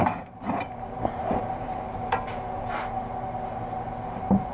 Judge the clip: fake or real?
fake